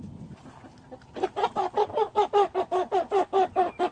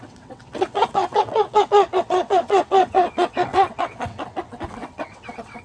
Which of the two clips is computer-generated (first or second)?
second